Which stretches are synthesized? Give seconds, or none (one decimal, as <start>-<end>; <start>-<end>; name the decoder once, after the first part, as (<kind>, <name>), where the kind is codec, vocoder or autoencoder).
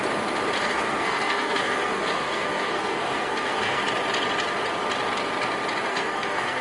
0.6-3.8 (codec, SNAC); 5.9-6.6